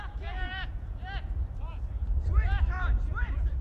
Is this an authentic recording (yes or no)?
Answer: no